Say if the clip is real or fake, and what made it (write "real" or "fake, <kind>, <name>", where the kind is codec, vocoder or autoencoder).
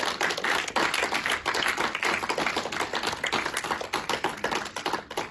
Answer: real